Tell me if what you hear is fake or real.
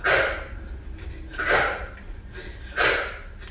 real